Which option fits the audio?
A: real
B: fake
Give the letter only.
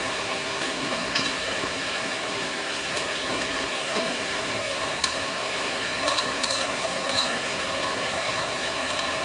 B